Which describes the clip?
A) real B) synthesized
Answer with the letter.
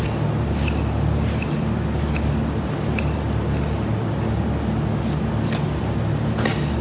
A